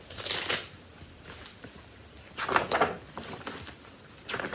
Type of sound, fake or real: real